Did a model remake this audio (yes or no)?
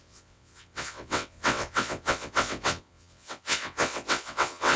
yes